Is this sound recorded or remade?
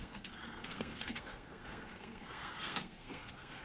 remade